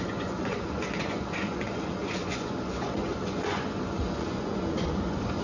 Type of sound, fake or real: fake